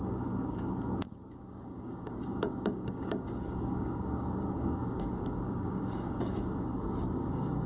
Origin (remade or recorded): remade